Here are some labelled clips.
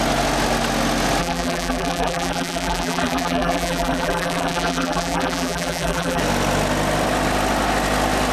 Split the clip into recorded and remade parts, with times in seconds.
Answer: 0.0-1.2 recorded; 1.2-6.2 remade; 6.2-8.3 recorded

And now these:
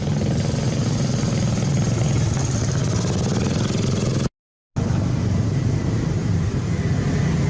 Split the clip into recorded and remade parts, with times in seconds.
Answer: 0.0-3.3 recorded; 3.3-4.3 remade; 4.3-6.2 recorded; 6.2-6.8 remade; 6.8-7.5 recorded

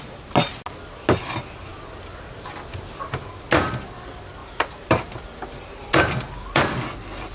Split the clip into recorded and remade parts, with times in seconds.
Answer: 0.0-4.4 recorded; 4.4-5.7 remade; 5.7-7.3 recorded

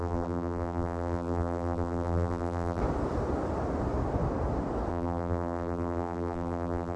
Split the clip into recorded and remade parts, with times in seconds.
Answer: 0.0-2.8 remade; 2.8-4.9 recorded; 4.9-7.0 remade

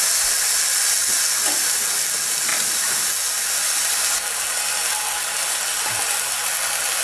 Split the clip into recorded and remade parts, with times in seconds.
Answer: 0.0-2.5 recorded; 2.5-3.1 remade; 3.1-7.0 recorded

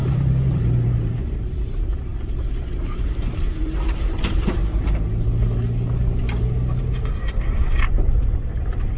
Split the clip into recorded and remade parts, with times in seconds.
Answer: 0.0-4.6 remade; 4.6-6.8 recorded; 6.8-9.0 remade

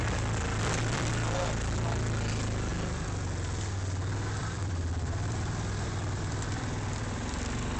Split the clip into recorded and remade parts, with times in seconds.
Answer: 0.0-2.7 remade; 2.7-4.4 recorded; 4.4-7.8 remade